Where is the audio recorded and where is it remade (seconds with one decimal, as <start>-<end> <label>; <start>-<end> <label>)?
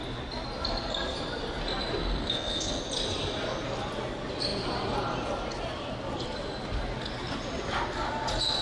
0.0-2.0 recorded; 2.0-2.8 remade; 2.8-8.6 recorded